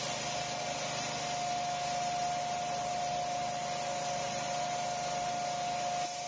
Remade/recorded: recorded